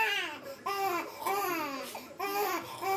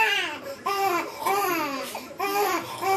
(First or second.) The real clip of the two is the first